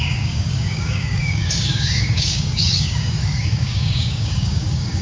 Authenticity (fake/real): fake